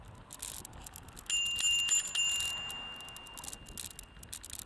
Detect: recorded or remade recorded